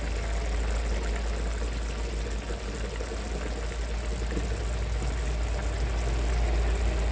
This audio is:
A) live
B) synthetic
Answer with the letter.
A